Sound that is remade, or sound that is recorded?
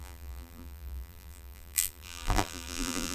remade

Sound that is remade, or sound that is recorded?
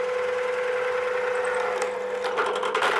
recorded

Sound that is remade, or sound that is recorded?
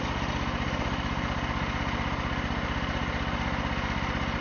recorded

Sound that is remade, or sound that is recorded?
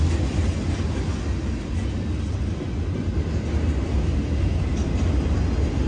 recorded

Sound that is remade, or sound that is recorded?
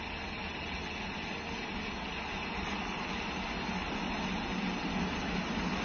recorded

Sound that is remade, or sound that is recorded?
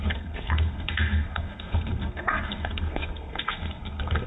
remade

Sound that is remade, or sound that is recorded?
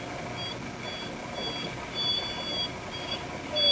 recorded